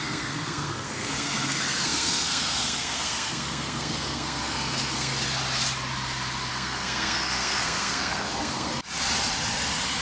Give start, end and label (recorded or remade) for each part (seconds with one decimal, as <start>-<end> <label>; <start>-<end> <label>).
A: 0.0-5.1 remade; 5.1-6.5 recorded; 6.5-8.7 remade; 8.7-10.0 recorded